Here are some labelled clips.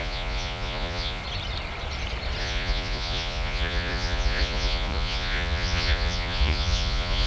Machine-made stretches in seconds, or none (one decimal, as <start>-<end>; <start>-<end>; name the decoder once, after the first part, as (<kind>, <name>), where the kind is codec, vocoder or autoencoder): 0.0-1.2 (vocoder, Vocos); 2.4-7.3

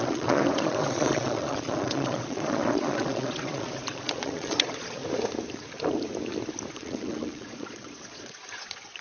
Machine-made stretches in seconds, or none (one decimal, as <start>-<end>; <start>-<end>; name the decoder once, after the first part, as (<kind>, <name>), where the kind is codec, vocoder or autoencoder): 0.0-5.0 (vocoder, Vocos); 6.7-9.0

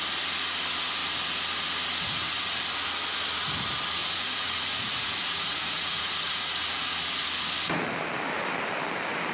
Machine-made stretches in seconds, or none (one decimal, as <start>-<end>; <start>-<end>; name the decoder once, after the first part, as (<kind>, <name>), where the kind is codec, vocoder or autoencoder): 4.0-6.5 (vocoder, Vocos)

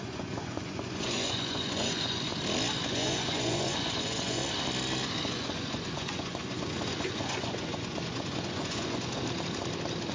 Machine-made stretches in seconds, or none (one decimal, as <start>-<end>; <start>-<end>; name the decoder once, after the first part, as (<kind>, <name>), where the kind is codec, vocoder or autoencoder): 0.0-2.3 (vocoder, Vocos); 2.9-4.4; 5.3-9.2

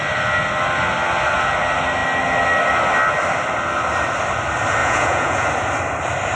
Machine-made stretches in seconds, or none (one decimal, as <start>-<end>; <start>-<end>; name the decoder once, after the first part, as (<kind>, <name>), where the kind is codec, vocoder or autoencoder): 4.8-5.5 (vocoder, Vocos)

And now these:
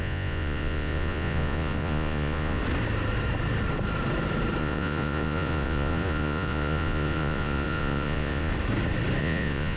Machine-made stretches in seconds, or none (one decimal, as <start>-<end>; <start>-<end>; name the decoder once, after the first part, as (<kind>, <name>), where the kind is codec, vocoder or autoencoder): 0.0-2.6 (vocoder, Vocos); 4.6-8.5; 9.2-9.8

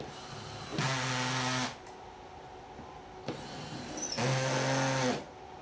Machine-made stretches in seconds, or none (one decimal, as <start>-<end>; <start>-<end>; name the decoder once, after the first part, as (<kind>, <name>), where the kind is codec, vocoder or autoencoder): none

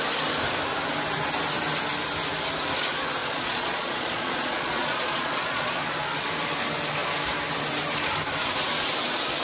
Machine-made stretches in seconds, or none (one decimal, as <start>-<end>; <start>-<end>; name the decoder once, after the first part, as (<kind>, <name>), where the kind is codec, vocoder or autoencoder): 3.2-5.8 (vocoder, Vocos)